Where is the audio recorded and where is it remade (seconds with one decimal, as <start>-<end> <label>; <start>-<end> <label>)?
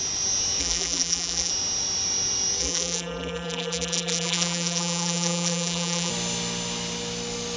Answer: 0.0-0.6 recorded; 0.6-1.5 remade; 1.5-2.6 recorded; 2.6-6.1 remade; 6.1-7.6 recorded